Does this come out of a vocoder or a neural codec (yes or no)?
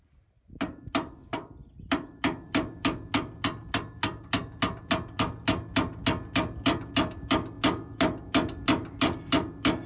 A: no